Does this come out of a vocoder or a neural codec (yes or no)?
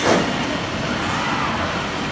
no